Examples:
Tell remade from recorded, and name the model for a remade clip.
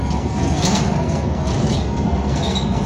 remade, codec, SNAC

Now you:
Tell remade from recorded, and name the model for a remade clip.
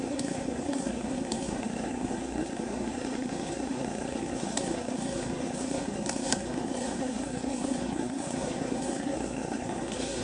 remade, codec, SNAC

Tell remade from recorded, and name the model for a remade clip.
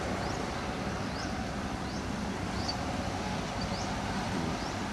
recorded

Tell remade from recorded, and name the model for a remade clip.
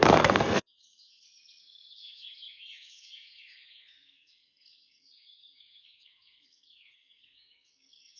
remade, codec, SNAC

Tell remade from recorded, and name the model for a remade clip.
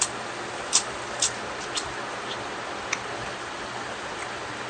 recorded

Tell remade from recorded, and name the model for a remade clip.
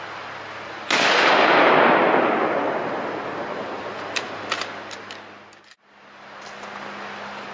recorded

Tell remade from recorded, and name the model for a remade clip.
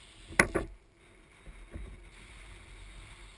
recorded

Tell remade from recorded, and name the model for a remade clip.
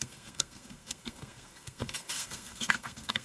remade, codec, SNAC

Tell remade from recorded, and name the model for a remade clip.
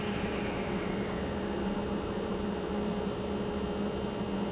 recorded